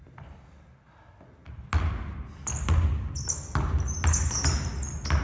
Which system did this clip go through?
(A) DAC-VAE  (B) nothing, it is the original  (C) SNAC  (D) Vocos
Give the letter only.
B